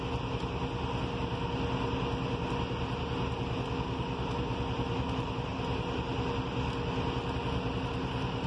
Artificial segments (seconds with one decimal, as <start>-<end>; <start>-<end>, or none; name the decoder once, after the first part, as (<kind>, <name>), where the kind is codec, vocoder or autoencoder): none